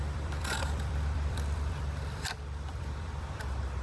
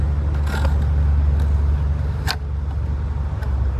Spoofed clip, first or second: first